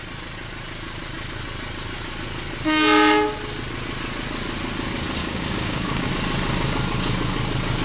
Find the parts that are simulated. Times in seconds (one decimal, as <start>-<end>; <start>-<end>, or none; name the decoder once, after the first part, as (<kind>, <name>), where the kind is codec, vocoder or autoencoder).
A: 5.2-6.1 (codec, DAC)